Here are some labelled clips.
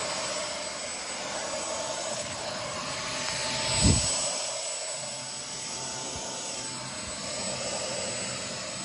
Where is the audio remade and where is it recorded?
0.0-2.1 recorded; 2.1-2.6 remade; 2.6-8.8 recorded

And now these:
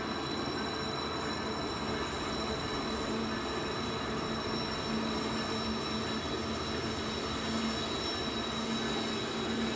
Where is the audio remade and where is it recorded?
0.0-9.8 recorded

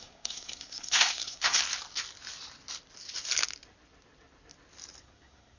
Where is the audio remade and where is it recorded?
0.0-1.6 remade; 1.6-5.0 recorded; 5.0-5.6 remade

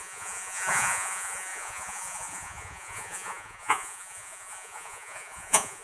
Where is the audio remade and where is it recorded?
0.0-5.8 remade

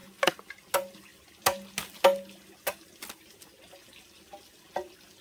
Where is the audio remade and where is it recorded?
0.0-5.2 recorded